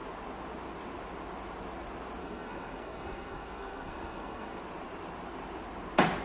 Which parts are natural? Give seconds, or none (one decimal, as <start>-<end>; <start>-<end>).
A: 0.0-2.2; 4.6-6.2